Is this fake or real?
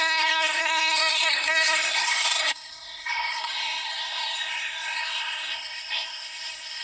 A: fake